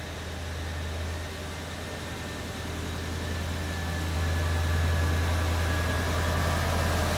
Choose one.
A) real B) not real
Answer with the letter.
A